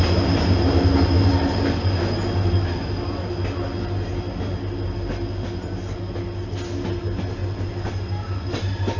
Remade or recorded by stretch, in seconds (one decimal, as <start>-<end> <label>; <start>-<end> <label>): 0.0-9.0 recorded